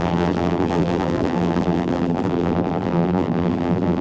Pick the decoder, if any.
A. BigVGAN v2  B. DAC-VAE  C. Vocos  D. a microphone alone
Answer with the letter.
A